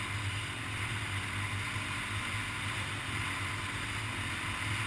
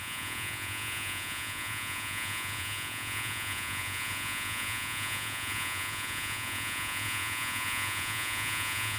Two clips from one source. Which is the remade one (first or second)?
second